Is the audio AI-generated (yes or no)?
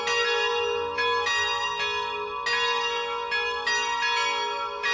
no